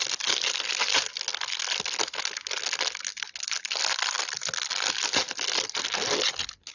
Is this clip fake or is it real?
real